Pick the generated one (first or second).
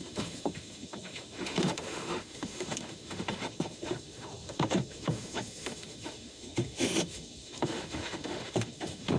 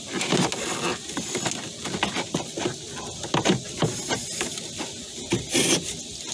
first